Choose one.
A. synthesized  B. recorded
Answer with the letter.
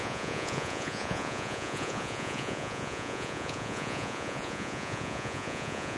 A